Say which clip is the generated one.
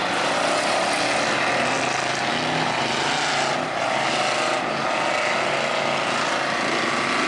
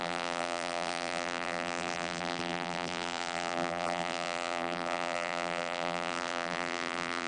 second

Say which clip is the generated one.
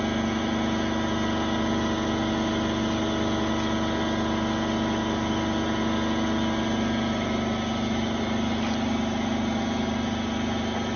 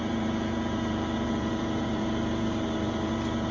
second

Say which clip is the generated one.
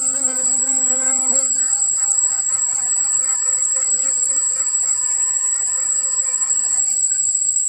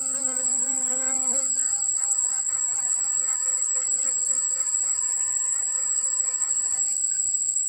first